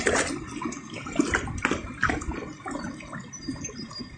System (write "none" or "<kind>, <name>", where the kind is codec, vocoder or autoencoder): none